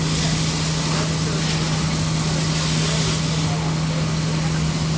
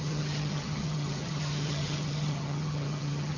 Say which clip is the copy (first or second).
second